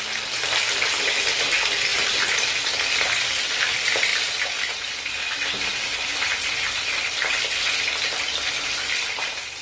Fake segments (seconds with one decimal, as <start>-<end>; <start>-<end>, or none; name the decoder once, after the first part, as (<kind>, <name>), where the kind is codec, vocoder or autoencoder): 1.9-2.5 (vocoder, BigVGAN v2)